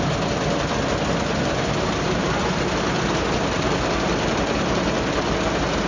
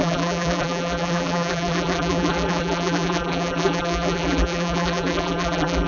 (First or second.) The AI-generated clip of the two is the second